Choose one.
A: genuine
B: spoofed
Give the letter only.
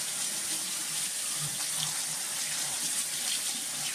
A